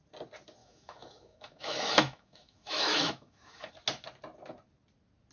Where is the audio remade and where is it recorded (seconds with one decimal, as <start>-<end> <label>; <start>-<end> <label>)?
0.0-0.6 recorded; 0.6-3.7 remade; 3.7-5.3 recorded